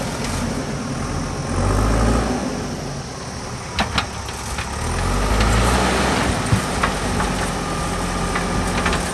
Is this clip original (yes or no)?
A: yes